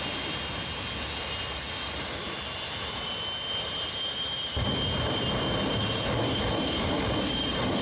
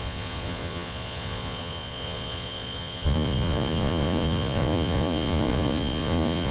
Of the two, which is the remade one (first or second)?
second